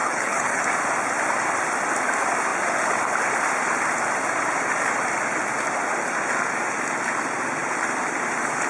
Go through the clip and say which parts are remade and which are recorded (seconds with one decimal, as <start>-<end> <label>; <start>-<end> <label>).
0.0-0.6 remade; 0.6-8.7 recorded